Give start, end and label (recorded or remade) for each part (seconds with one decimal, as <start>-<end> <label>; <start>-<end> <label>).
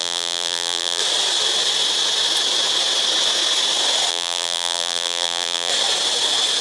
0.0-1.0 remade; 1.0-4.1 recorded; 4.1-5.7 remade; 5.7-6.6 recorded